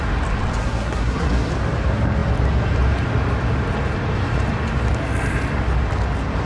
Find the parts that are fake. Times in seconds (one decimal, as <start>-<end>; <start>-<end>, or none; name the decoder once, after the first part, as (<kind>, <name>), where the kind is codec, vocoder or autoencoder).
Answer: 0.6-1.5 (codec, SNAC)